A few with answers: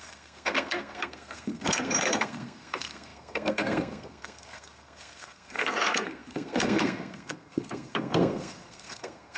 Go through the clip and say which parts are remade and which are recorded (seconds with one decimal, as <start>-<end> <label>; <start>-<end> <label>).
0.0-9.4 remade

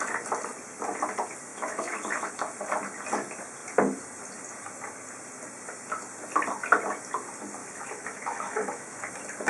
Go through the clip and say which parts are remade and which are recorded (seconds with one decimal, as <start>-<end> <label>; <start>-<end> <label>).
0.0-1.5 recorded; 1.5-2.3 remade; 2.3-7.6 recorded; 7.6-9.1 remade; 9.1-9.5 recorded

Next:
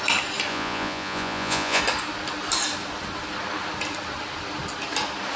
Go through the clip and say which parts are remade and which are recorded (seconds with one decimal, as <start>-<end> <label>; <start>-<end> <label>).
0.0-0.5 recorded; 0.5-1.8 remade; 1.8-5.4 recorded

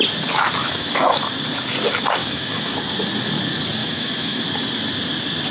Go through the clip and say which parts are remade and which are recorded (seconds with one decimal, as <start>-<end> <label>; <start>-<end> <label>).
0.0-0.6 recorded; 0.6-1.2 remade; 1.2-2.2 recorded; 2.2-2.8 remade; 2.8-3.8 recorded; 3.8-4.4 remade; 4.4-5.5 recorded

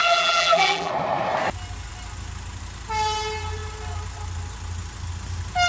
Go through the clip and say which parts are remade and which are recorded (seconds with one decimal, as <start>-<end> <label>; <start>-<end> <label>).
0.0-0.9 remade; 0.9-5.7 recorded

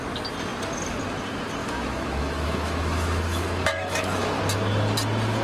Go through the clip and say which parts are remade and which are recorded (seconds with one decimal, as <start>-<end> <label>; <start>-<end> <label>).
0.0-1.6 recorded; 1.6-4.4 remade; 4.4-5.4 recorded